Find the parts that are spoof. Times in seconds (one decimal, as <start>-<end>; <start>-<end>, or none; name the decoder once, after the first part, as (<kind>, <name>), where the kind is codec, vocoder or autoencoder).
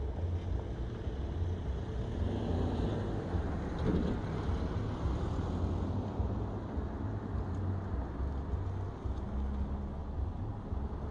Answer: 10.0-10.6 (vocoder, BigVGAN v2)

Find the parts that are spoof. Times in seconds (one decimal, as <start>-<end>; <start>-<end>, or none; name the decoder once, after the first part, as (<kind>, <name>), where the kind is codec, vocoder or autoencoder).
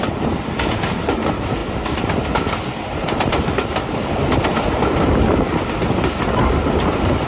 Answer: none